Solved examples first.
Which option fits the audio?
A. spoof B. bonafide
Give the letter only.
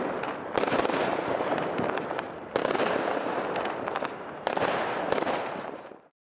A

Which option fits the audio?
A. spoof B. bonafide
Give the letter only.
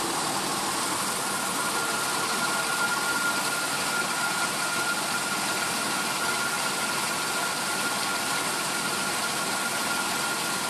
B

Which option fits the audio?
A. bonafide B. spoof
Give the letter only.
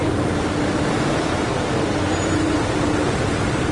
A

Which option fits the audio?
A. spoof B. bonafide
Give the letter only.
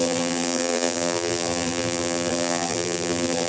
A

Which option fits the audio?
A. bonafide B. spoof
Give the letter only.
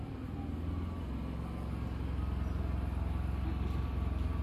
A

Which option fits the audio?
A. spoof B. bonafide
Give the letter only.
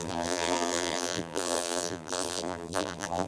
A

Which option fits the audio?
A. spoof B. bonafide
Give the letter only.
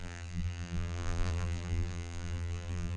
A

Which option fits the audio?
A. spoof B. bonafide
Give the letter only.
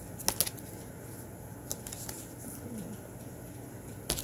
B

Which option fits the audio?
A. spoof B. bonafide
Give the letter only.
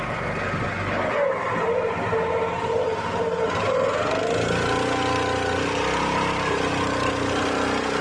B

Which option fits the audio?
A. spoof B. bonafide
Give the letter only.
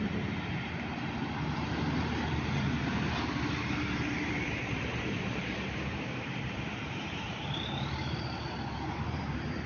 A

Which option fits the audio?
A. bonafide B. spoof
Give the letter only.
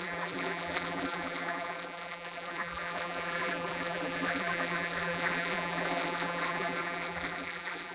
B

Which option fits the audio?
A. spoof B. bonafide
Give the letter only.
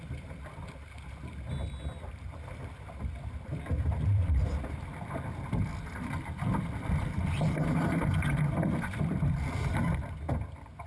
B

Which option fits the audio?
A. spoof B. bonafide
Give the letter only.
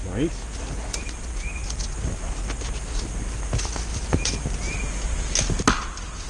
B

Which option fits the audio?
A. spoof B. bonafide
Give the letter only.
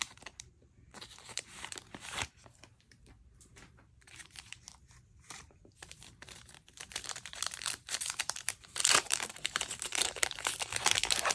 A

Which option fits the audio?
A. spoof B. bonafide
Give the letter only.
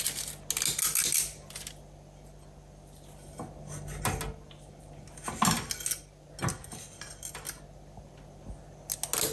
B